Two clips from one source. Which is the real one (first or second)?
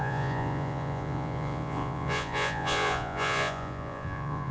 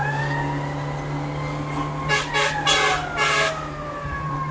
second